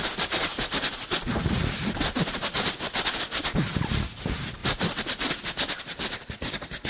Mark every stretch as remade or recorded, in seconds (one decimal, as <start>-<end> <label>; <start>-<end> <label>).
0.0-6.9 recorded